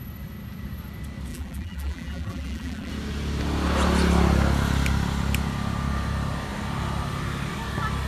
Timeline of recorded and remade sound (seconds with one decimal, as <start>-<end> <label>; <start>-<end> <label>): 0.0-1.3 recorded; 1.3-2.9 remade; 2.9-8.1 recorded